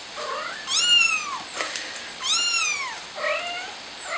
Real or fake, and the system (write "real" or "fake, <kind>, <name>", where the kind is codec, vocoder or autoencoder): real